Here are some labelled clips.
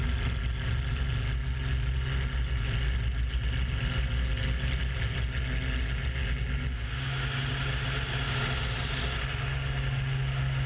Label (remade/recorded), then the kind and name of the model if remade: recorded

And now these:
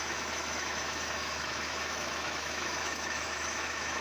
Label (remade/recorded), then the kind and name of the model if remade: remade, autoencoder, DAC-VAE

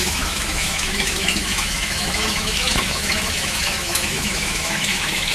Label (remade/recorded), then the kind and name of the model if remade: remade, autoencoder, DAC-VAE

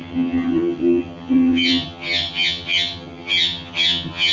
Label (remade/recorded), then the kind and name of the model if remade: remade, vocoder, HiFi-GAN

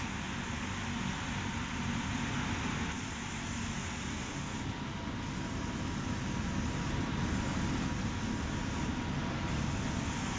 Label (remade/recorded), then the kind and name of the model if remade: recorded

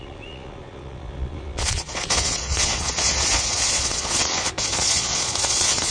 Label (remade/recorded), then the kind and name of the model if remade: remade, vocoder, Vocos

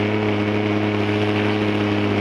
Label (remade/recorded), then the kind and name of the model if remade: recorded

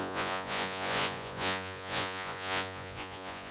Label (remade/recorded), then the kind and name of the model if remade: remade, vocoder, Vocos